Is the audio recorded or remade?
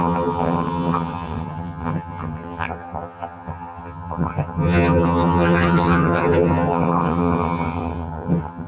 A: remade